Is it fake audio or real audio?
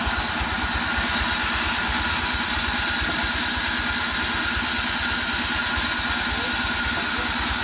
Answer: real